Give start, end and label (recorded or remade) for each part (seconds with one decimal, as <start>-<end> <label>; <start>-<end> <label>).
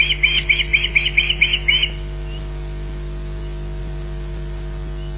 0.0-5.2 recorded